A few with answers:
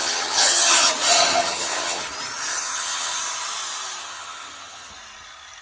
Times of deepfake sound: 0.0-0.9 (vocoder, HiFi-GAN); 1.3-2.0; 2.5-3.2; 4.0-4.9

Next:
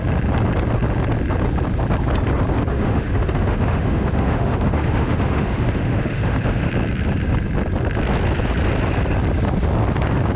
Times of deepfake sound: 2.7-6.7 (autoencoder, DAC-VAE)